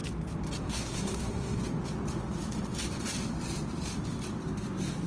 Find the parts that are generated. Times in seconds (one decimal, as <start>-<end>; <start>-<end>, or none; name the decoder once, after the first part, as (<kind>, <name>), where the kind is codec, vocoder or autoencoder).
0.6-1.6 (codec, SNAC)